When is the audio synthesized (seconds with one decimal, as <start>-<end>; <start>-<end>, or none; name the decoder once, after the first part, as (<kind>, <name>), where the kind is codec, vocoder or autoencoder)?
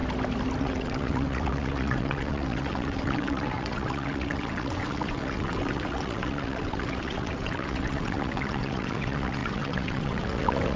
0.6-10.8 (vocoder, WaveNeXt)